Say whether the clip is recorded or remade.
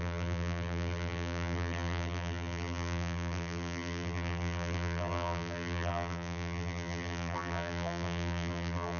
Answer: remade